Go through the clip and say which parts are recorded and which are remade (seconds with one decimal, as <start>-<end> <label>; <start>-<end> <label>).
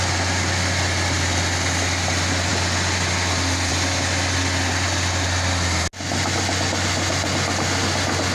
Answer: 0.0-8.3 recorded